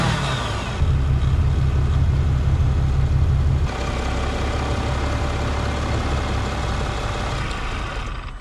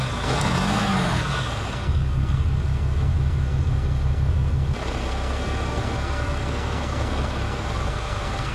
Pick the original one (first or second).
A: first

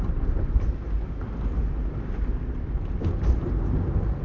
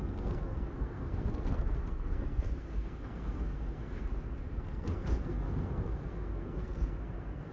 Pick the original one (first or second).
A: first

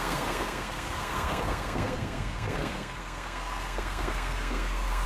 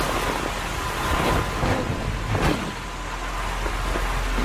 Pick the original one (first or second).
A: second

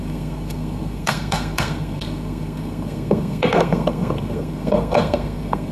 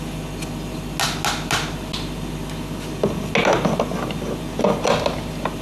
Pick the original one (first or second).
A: second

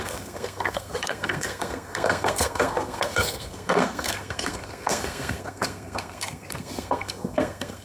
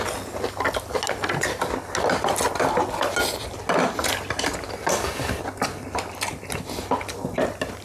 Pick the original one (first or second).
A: second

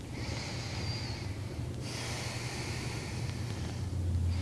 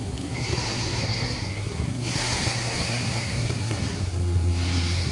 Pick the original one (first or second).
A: first